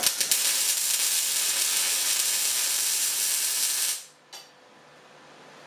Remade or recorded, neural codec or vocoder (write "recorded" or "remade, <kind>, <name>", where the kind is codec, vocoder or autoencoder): recorded